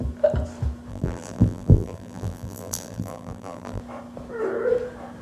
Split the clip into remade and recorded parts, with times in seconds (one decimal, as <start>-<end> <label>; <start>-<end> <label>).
0.0-0.9 recorded; 0.9-3.8 remade; 3.8-5.2 recorded